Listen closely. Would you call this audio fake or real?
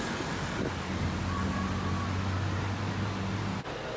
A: real